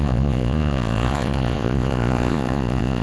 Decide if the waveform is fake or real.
fake